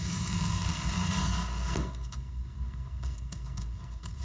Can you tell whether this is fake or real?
fake